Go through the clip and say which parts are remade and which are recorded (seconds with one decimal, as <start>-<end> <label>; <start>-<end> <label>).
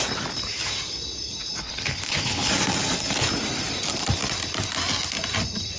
0.0-1.6 recorded; 1.6-2.5 remade; 2.5-5.8 recorded